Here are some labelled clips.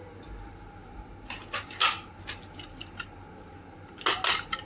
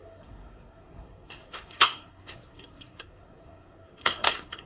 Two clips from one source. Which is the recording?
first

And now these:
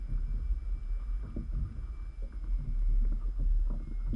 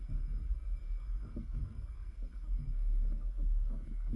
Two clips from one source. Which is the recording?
first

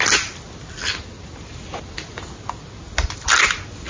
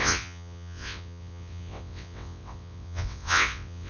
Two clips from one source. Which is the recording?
first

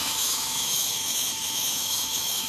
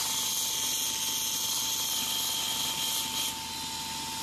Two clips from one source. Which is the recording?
second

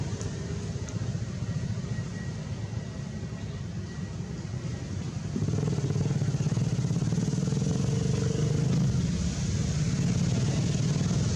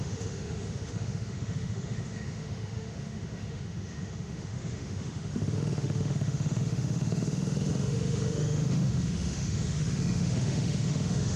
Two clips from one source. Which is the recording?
first